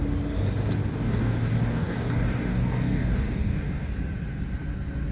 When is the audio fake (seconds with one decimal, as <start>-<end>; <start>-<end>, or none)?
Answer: 0.8-3.9